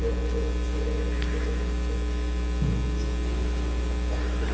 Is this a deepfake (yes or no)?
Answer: no